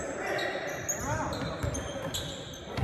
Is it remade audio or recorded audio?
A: recorded